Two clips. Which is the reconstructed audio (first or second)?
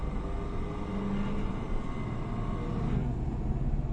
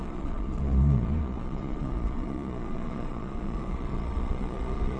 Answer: second